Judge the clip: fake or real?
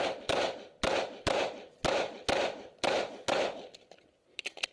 fake